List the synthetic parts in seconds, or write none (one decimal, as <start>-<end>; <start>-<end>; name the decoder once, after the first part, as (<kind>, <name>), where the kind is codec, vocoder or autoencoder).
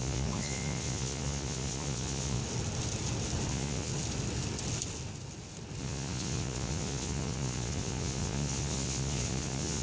0.0-2.4 (vocoder, Vocos); 3.5-3.9; 5.8-9.8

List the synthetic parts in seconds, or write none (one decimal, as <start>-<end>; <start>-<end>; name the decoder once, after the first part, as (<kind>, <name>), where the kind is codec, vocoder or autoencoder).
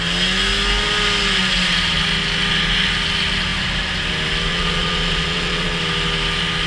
4.5-5.8 (vocoder, Vocos)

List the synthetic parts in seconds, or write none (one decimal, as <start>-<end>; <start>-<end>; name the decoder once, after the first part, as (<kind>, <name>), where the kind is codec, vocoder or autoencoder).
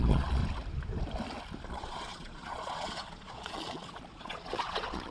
0.0-0.4 (vocoder, Vocos); 1.7-5.1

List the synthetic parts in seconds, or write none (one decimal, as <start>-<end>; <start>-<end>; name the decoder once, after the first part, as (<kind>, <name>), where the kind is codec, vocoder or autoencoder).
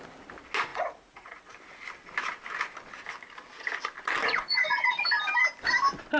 0.7-1.5 (vocoder, Vocos); 4.2-5.1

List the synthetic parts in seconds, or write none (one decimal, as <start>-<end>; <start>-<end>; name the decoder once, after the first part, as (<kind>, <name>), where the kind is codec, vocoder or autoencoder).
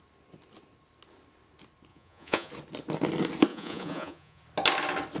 1.9-2.5 (vocoder, Vocos); 3.5-4.4